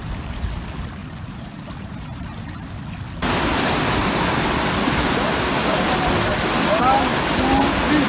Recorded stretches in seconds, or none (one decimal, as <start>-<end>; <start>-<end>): 0.0-1.0; 2.5-3.2; 3.8-8.1